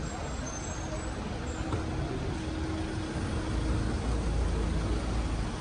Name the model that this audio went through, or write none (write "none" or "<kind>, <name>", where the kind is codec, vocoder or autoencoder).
none